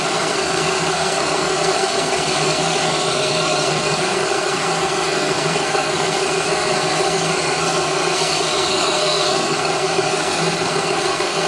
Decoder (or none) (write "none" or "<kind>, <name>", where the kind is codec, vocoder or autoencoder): codec, SNAC